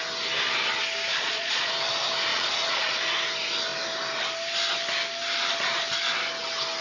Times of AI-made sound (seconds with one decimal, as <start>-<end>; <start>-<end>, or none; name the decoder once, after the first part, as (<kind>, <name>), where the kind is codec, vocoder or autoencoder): 1.1-1.7 (vocoder, Vocos); 2.3-3.0